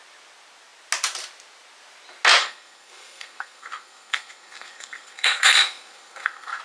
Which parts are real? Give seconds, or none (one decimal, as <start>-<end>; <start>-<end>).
0.0-2.4